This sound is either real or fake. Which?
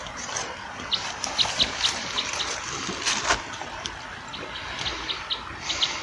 real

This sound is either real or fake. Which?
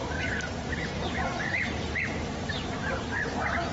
fake